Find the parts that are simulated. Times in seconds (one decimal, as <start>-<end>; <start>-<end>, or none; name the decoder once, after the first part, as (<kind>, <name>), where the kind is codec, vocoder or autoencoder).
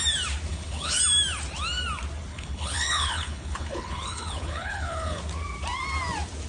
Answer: 0.5-1.0 (codec, HILCodec); 2.3-5.2